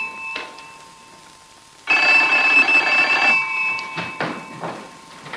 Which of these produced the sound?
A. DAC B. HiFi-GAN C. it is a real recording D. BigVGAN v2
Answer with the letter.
D